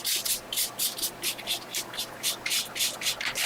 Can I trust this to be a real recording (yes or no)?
yes